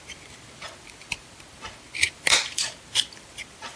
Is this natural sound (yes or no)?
no